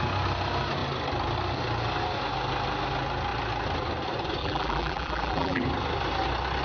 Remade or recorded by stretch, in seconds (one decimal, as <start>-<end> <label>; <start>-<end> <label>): 0.0-4.4 recorded; 4.4-5.6 remade; 5.6-6.6 recorded